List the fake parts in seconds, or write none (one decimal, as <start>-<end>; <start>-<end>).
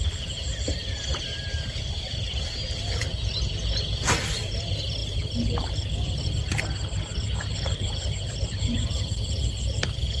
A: 0.0-1.3; 2.6-10.2